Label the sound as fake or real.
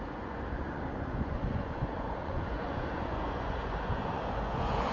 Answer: fake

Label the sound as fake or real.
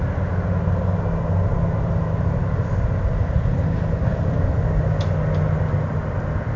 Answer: real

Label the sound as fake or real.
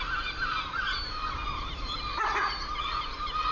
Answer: real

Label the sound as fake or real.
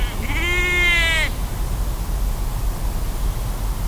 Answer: real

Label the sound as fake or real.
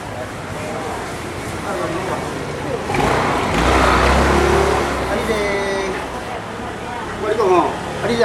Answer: real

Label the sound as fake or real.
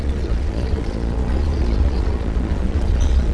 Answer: fake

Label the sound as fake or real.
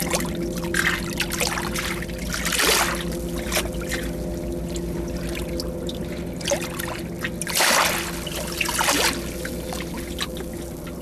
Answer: real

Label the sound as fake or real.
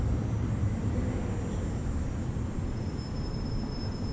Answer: real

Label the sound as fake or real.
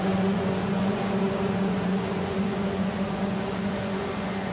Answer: fake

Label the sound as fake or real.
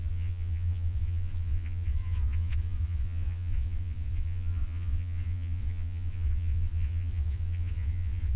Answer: fake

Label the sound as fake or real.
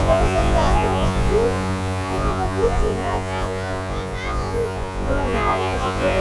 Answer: fake